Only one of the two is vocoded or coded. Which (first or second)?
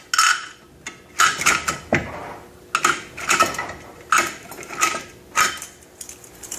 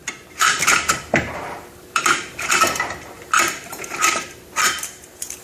second